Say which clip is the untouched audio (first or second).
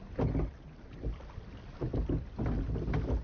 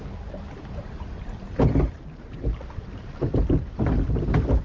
first